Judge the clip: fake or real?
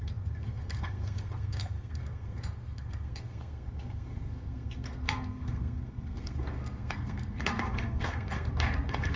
fake